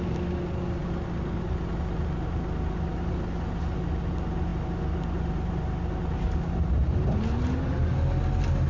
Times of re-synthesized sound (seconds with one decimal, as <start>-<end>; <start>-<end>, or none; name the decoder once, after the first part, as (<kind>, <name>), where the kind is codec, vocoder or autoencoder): none